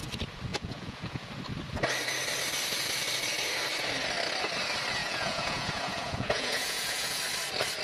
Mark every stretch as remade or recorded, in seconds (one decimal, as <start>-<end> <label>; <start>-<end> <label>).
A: 0.0-0.5 recorded; 0.5-1.3 remade; 1.3-5.0 recorded; 5.0-7.2 remade; 7.2-7.8 recorded